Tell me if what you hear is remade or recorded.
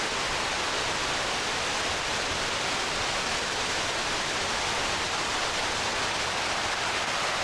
recorded